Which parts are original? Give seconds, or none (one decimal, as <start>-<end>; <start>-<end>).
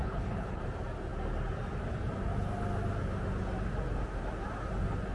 0.6-5.1